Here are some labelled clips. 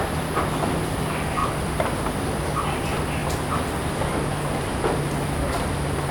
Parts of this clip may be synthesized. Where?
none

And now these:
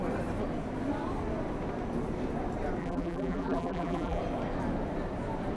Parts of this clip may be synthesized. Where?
2.8-4.2 (vocoder, BigVGAN v2)

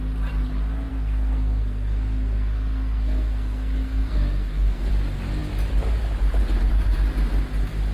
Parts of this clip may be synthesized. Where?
0.9-4.9 (codec, SNAC)

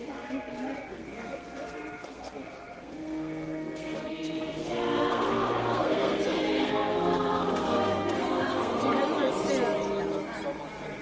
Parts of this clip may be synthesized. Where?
0.0-8.8 (codec, SNAC)